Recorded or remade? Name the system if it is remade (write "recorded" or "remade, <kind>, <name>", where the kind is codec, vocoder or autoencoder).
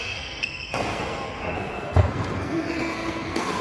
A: remade, codec, SNAC